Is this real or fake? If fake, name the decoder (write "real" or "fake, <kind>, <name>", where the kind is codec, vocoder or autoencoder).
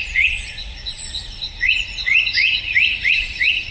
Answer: fake, vocoder, Vocos